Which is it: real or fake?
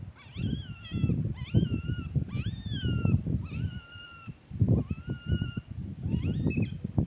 real